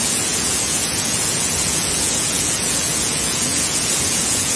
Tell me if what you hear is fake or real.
fake